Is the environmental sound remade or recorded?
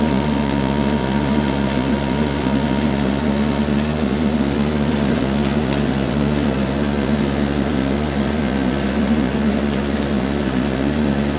remade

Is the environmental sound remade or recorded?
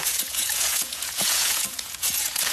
remade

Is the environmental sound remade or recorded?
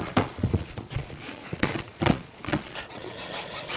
remade